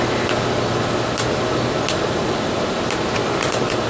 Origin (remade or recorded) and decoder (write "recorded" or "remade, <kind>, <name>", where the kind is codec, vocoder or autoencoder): recorded